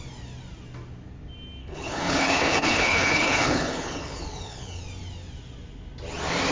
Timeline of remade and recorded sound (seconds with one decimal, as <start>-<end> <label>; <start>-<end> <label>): 0.0-1.6 recorded; 1.6-4.8 remade; 4.8-6.5 recorded